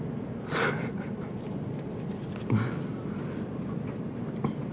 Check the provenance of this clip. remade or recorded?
recorded